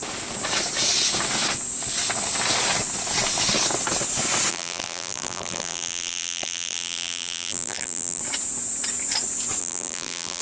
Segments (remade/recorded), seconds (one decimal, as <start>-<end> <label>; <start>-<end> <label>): 0.0-4.5 recorded; 4.5-8.2 remade; 8.2-9.6 recorded; 9.6-10.4 remade